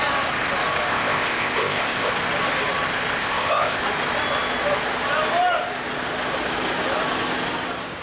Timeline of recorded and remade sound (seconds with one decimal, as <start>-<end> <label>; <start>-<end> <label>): 0.0-0.9 recorded; 0.9-2.1 remade; 2.1-3.2 recorded; 3.2-3.8 remade; 3.8-8.0 recorded